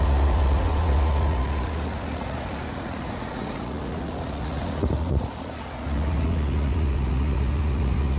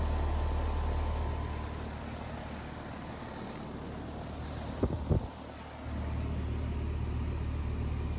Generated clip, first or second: first